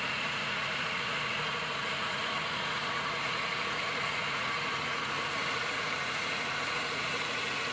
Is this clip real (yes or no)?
no